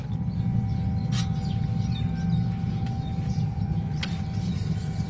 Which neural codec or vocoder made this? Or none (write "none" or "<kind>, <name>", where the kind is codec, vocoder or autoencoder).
none